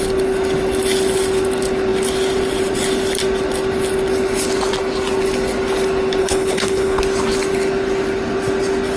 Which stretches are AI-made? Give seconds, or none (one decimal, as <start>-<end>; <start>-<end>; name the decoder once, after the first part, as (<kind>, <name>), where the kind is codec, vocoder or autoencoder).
6.2-7.0 (codec, HILCodec)